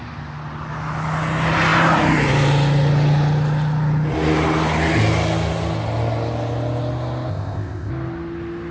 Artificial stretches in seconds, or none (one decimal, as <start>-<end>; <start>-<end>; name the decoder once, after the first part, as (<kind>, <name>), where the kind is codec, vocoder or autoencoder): 7.3-7.9 (codec, ZipCodec)